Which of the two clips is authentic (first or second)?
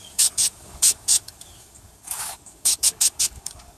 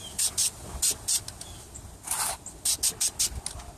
second